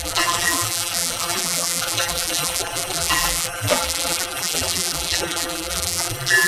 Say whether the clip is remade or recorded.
remade